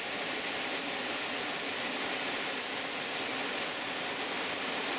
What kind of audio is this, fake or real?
real